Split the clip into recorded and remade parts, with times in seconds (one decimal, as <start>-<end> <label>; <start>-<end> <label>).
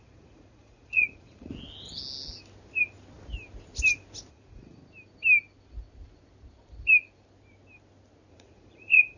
0.0-1.5 remade; 1.5-4.3 recorded; 4.3-4.8 remade; 4.8-8.3 recorded; 8.3-9.2 remade